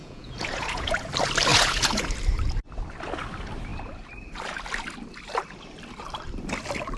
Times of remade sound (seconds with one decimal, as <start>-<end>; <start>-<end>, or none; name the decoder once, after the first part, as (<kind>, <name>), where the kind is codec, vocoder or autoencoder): 0.0-1.1 (vocoder, Vocos); 1.5-2.1